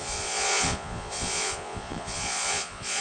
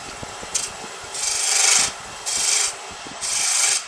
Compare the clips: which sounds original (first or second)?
second